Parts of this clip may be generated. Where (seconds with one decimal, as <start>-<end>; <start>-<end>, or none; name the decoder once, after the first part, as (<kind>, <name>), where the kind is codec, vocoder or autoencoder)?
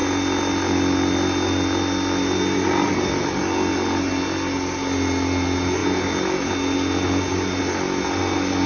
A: none